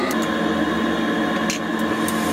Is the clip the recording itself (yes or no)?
yes